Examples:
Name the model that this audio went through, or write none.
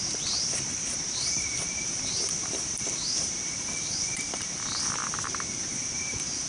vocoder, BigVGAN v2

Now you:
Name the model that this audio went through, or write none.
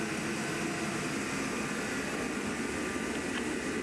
none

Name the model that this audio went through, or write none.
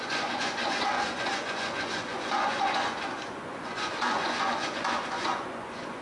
vocoder, Vocos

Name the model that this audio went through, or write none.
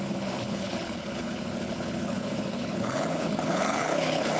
codec, HILCodec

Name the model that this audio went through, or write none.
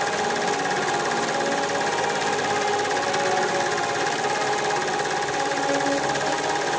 none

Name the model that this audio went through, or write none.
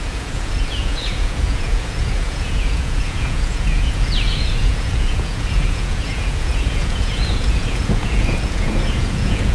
vocoder, Vocos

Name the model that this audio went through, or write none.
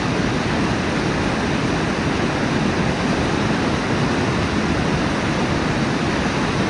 none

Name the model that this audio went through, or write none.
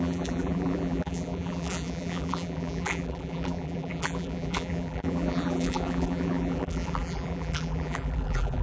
vocoder, BigVGAN v2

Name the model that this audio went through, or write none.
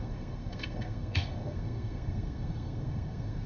codec, SNAC